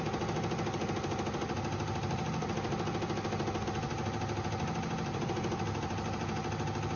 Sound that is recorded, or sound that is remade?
recorded